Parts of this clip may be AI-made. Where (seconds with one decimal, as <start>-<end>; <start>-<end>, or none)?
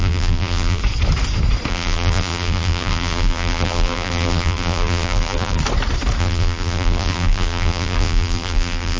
0.0-0.8; 1.7-5.6; 6.2-9.0